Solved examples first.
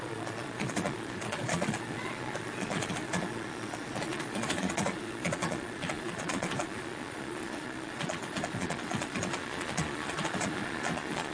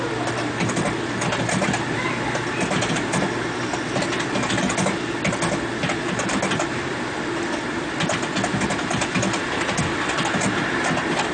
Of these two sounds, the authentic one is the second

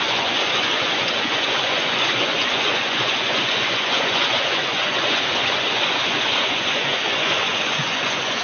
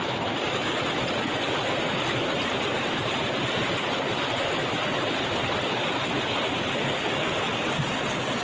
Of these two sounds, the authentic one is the second